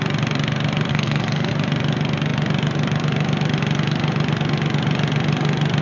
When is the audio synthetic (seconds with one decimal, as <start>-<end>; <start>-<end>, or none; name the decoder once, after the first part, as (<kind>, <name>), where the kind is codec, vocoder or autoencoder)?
0.9-1.5 (codec, SNAC)